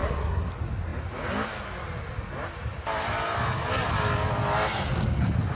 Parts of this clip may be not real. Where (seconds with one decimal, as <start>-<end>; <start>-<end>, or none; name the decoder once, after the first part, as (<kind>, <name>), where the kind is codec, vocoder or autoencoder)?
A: 0.0-0.5 (codec, SNAC)